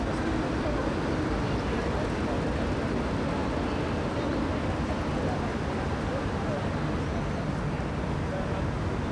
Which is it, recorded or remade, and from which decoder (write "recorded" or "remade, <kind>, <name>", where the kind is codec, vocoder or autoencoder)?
recorded